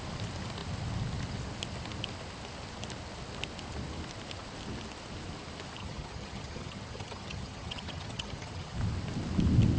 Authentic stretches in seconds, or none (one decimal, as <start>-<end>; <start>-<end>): 0.0-5.8; 8.8-9.8